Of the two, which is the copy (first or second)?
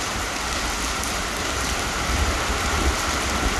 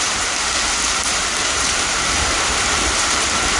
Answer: second